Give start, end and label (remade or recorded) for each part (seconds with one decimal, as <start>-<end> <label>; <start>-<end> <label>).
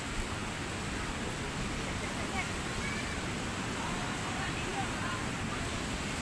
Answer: 0.0-6.2 recorded